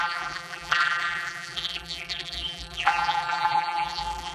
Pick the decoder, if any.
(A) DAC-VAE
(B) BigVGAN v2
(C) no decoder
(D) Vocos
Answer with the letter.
B